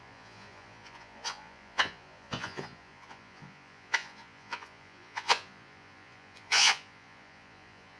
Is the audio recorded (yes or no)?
no